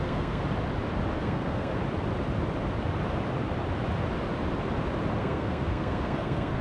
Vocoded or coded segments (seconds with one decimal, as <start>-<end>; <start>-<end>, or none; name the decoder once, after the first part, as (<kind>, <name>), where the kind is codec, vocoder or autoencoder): 0.0-0.4 (codec, SNAC); 1.2-1.7; 5.2-6.6